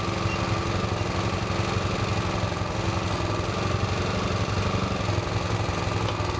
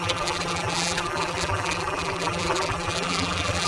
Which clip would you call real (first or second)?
first